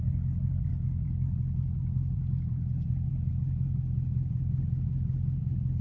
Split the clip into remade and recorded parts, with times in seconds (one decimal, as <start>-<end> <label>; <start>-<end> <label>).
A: 0.0-5.8 recorded